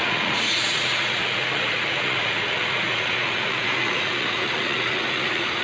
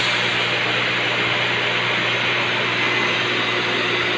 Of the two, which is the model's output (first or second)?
first